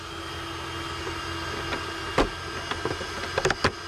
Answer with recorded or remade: recorded